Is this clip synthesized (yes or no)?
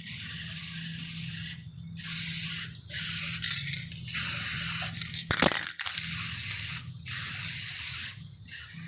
no